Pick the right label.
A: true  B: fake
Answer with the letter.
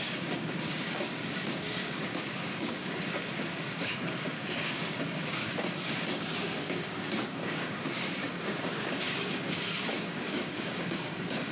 B